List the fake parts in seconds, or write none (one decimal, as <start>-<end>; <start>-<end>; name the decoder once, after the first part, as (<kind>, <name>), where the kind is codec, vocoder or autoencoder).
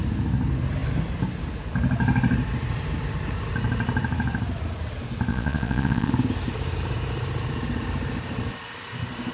5.3-6.1 (vocoder, Vocos)